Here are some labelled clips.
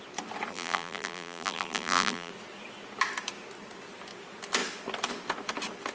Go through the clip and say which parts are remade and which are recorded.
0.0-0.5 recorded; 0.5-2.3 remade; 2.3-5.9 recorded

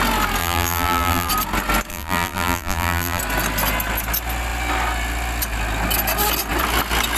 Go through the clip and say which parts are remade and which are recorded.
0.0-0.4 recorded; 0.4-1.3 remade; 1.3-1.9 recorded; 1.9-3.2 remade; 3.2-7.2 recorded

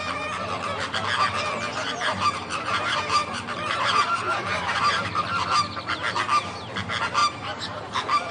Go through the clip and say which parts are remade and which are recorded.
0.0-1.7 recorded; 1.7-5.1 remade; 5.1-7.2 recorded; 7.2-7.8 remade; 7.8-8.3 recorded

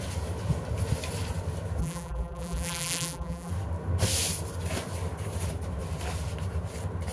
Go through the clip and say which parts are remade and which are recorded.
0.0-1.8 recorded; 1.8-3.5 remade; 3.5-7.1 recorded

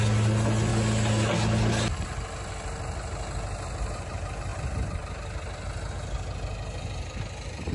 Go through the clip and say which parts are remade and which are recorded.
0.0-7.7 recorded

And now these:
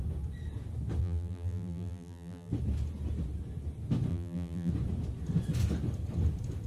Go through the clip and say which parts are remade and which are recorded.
0.0-1.0 recorded; 1.0-2.5 remade; 2.5-4.1 recorded; 4.1-4.7 remade; 4.7-6.7 recorded